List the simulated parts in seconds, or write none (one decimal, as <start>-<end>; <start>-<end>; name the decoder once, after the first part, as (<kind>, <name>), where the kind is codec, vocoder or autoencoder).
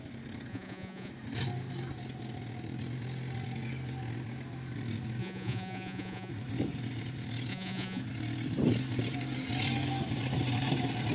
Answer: 0.5-1.1 (vocoder, Vocos); 5.2-6.3; 7.5-8.0